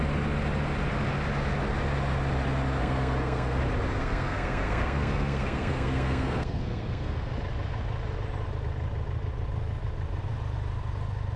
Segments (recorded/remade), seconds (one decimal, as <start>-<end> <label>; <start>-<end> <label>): 0.0-2.8 recorded; 2.8-3.6 remade; 3.6-4.0 recorded; 4.0-7.3 remade; 7.3-11.4 recorded

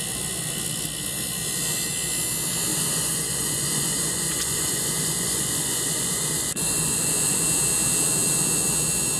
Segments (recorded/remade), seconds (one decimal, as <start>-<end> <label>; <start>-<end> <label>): 0.0-2.7 recorded; 2.7-7.4 remade; 7.4-9.2 recorded

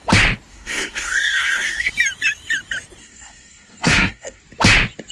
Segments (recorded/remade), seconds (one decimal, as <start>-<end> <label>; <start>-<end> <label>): 0.0-0.5 recorded; 0.5-1.9 remade; 1.9-3.0 recorded; 3.0-4.4 remade; 4.4-5.1 recorded